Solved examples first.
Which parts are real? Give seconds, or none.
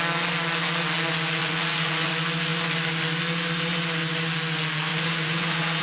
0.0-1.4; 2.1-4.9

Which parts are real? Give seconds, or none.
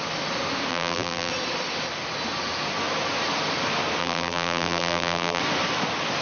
0.0-0.7; 1.3-4.0; 5.4-6.2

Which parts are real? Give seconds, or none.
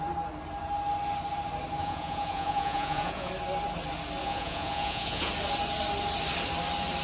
0.0-1.8; 3.3-4.2; 5.3-7.0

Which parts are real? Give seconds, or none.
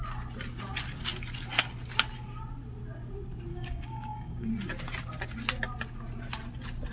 0.0-3.5; 4.5-6.9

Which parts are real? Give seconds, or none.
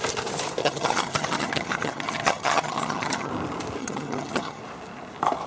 0.0-0.6; 3.3-3.8; 4.6-5.5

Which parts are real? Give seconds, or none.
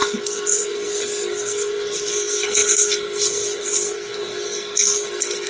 none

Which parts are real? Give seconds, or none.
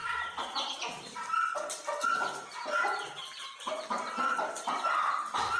0.0-3.4